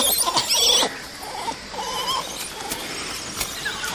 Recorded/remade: recorded